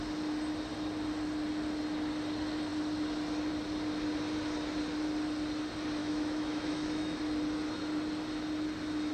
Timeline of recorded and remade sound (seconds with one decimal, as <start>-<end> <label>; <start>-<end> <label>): 0.0-6.0 recorded; 6.0-7.2 remade; 7.2-9.1 recorded